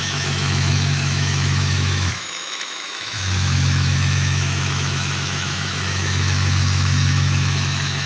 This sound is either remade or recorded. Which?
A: remade